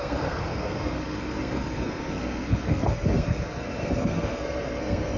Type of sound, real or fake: fake